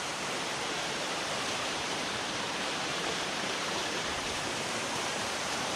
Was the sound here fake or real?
fake